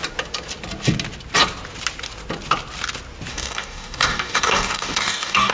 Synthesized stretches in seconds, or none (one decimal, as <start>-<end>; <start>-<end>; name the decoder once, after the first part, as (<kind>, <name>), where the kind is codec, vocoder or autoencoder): 3.3-5.5 (codec, DAC)